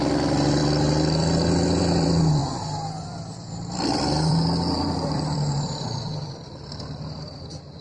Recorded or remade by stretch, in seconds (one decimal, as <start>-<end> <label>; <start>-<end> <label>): 0.0-0.6 remade; 0.6-1.8 recorded; 1.8-2.4 remade; 2.4-3.0 recorded; 3.0-7.8 remade